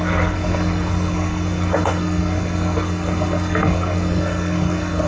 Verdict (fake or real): fake